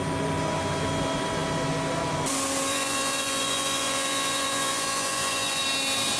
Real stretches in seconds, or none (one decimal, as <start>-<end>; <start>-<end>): 0.0-2.7; 5.6-6.2